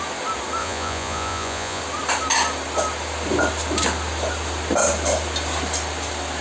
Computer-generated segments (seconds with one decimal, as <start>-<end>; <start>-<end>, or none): 0.6-1.8